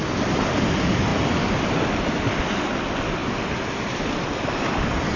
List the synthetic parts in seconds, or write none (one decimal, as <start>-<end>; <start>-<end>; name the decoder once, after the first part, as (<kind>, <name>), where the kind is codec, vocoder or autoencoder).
none